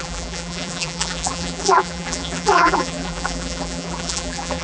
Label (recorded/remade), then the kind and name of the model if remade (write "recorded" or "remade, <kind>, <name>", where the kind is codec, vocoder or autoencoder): remade, vocoder, BigVGAN v2